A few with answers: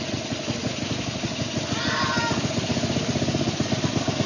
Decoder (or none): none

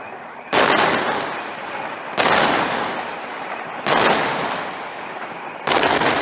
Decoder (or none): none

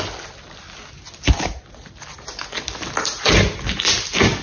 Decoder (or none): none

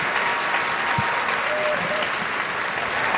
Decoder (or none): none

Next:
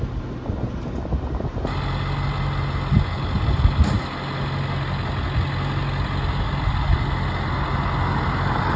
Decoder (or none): none